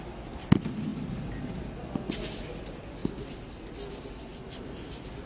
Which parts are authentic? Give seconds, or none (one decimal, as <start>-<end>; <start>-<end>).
0.0-3.0; 3.6-4.3